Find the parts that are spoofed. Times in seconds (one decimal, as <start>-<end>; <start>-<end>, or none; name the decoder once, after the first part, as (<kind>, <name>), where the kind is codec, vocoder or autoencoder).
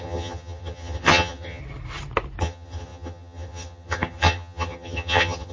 0.0-1.6 (vocoder, HiFi-GAN); 2.4-5.5